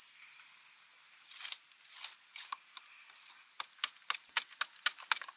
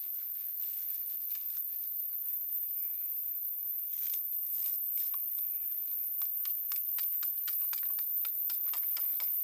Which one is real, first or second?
first